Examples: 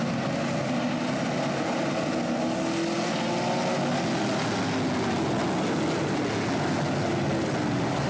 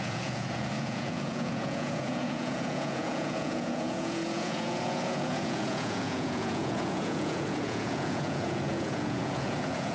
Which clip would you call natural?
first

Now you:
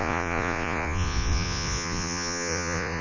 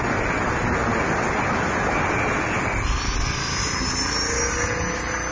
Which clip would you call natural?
second